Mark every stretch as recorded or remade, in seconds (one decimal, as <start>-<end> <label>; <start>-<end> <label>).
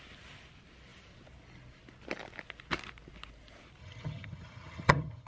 0.0-3.8 recorded; 3.8-5.3 remade